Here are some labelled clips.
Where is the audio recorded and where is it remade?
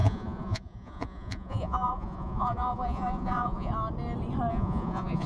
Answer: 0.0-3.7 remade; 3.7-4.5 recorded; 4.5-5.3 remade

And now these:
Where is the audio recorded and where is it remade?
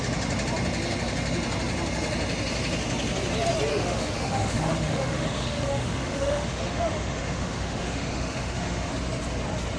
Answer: 0.0-3.7 recorded; 3.7-8.9 remade; 8.9-9.8 recorded